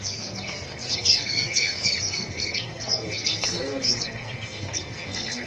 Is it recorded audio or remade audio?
remade